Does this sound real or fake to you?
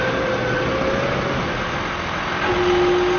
real